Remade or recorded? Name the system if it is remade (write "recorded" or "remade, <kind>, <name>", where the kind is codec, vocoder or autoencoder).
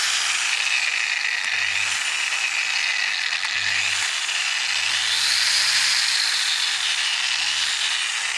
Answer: recorded